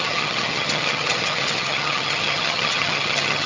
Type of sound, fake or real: fake